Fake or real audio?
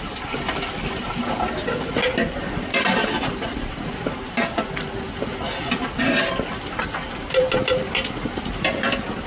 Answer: real